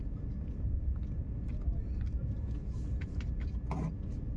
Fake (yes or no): no